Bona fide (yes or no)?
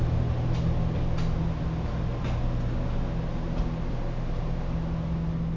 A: yes